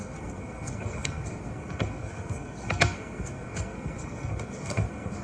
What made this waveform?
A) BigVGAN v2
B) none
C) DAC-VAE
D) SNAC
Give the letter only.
D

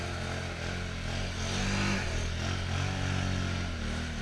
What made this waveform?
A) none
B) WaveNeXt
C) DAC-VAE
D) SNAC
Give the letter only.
A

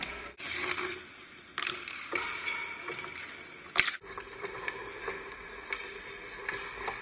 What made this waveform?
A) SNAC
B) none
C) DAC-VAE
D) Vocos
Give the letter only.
B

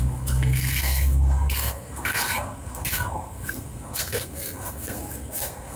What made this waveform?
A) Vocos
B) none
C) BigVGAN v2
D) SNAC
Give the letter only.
D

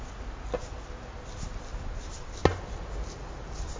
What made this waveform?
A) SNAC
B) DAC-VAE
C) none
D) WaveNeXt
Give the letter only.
C